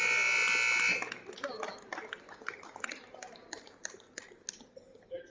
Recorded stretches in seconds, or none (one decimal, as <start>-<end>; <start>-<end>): 0.0-1.9; 4.2-5.3